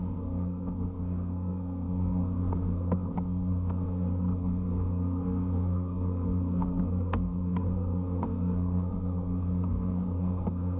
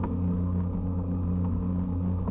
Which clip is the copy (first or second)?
first